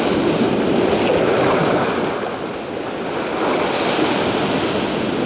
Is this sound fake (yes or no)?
no